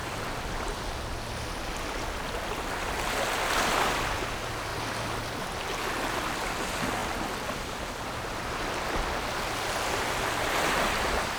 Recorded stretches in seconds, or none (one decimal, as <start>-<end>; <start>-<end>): 0.6-4.7; 5.3-7.0; 10.2-11.4

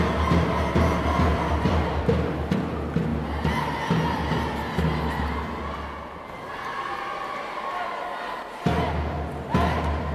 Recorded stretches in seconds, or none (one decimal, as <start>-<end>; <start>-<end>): 0.0-1.3; 2.1-10.1

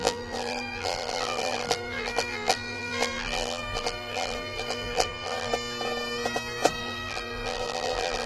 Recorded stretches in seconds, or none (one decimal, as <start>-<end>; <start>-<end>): 5.5-6.8

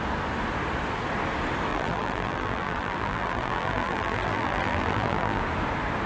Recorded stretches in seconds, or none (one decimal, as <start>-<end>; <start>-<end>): 0.0-1.7; 5.4-6.1

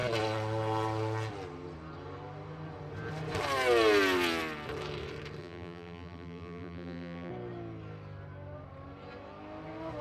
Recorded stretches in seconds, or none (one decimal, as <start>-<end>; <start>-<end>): 0.0-5.4; 7.3-10.0

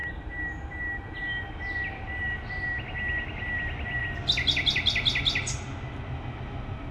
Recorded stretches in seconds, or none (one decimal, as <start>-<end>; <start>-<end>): 0.0-6.9